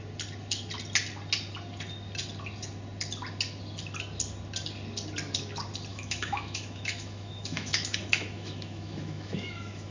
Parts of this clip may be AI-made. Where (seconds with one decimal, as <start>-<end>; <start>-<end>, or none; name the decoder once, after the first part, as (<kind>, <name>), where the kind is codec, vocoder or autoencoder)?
5.9-9.9 (autoencoder, DAC-VAE)